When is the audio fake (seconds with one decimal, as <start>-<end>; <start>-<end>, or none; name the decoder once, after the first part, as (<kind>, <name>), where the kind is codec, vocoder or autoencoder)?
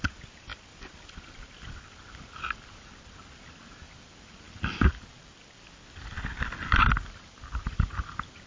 none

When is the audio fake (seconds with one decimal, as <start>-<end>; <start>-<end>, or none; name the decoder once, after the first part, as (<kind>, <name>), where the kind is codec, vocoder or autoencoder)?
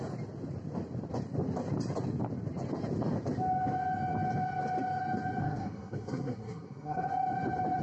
5.4-7.1 (codec, SNAC)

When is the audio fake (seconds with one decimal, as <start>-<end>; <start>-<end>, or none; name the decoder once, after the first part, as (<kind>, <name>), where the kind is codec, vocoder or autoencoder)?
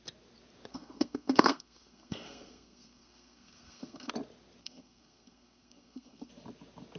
0.7-4.1 (codec, SNAC); 4.6-6.3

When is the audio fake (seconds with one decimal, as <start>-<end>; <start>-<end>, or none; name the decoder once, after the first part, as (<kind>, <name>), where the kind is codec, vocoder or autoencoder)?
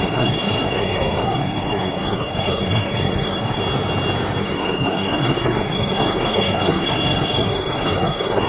0.0-3.6 (codec, SNAC); 4.4-8.5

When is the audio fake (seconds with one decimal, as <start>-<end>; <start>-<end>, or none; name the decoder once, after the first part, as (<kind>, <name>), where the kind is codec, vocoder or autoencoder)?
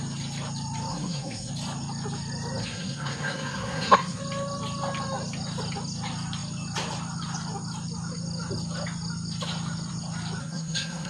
0.9-1.5 (codec, SNAC); 2.6-4.2; 10.4-11.1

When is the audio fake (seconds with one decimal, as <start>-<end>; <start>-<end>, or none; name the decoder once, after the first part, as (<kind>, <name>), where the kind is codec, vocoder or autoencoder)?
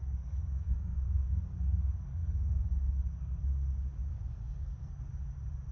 0.0-3.4 (codec, SNAC); 4.1-5.0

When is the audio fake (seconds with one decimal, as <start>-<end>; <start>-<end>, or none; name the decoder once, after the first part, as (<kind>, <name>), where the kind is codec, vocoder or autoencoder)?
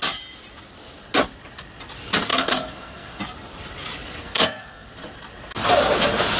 2.3-3.2 (codec, SNAC); 4.2-4.9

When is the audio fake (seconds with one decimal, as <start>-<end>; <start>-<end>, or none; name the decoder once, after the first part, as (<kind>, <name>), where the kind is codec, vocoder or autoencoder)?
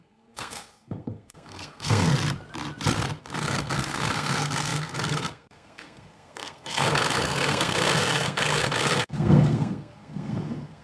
0.0-2.1 (codec, SNAC); 3.2-10.8